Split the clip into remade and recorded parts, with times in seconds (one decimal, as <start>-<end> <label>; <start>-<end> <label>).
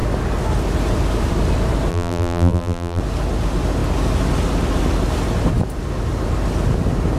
0.0-1.9 recorded; 1.9-3.0 remade; 3.0-7.2 recorded